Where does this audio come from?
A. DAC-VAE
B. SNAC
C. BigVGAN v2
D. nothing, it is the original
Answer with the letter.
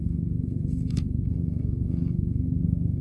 B